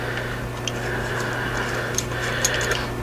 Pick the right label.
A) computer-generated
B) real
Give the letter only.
B